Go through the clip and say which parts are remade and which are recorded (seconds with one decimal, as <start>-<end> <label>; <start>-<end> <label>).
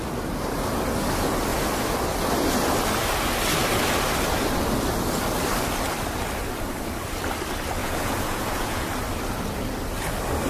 0.0-7.8 recorded; 7.8-8.9 remade; 8.9-10.5 recorded